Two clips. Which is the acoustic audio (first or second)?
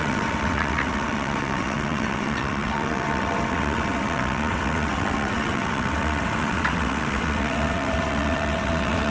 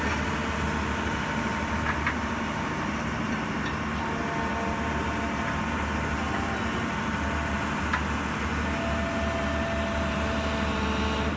second